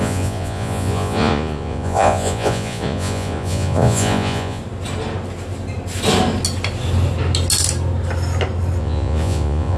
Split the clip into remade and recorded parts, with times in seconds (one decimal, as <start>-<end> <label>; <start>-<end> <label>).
0.0-4.6 remade; 4.6-8.8 recorded; 8.8-9.8 remade